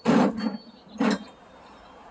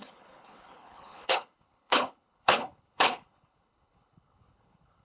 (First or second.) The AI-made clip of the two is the second